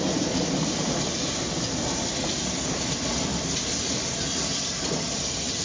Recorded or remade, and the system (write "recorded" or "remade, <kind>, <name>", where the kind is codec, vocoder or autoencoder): recorded